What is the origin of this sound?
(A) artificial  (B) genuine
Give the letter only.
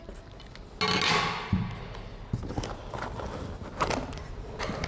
B